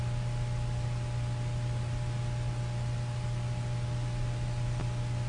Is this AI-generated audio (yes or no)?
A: no